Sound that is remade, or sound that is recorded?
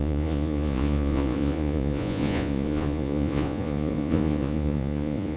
remade